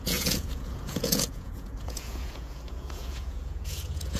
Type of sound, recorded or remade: remade